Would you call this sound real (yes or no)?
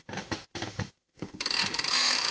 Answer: no